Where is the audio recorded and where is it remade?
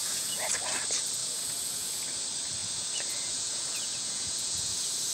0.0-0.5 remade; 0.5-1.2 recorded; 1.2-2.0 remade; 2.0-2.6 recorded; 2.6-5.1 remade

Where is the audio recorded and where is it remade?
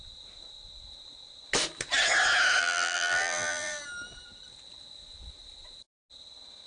0.0-2.6 recorded; 2.6-3.8 remade; 3.8-6.7 recorded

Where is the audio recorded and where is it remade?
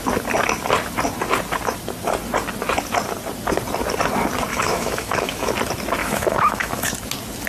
0.0-4.5 recorded; 4.5-5.5 remade; 5.5-6.0 recorded; 6.0-6.9 remade; 6.9-7.5 recorded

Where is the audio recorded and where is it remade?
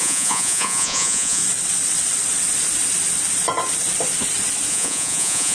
0.0-1.4 remade; 1.4-4.7 recorded; 4.7-5.5 remade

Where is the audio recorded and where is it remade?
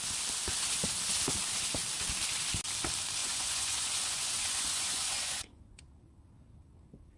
0.0-3.2 recorded; 3.2-5.8 remade; 5.8-7.2 recorded